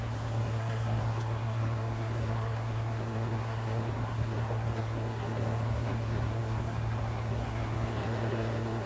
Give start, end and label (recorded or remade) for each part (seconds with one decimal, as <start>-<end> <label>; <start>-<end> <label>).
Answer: 0.0-8.9 remade